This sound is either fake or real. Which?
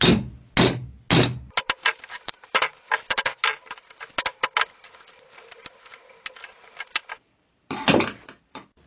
real